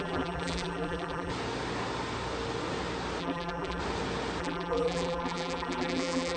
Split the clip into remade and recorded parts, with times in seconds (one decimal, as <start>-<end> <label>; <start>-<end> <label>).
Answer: 0.0-1.3 remade; 1.3-3.2 recorded; 3.2-3.8 remade; 3.8-4.4 recorded; 4.4-6.4 remade